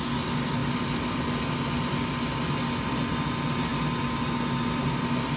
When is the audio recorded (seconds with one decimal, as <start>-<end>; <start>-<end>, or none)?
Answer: 0.0-5.4